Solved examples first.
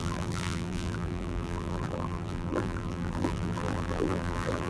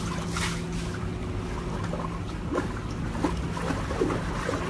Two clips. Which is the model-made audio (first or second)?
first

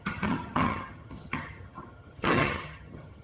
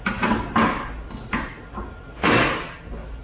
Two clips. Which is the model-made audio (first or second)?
first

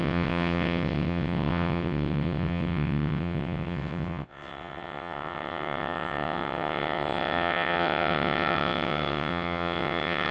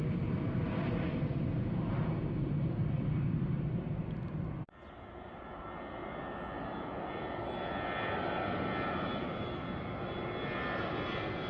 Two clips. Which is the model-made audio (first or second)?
first